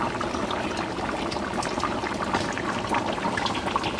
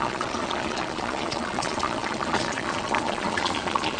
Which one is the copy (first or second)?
second